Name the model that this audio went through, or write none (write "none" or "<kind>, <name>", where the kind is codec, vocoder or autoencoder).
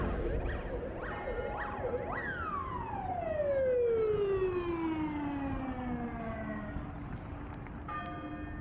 none